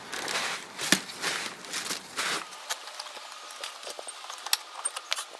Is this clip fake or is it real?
real